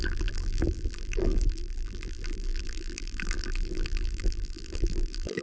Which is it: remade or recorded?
remade